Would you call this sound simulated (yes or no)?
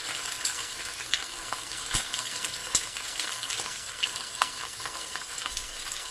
yes